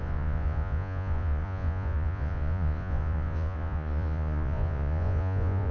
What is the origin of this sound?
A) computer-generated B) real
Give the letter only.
A